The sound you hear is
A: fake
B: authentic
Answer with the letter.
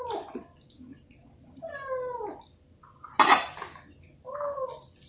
B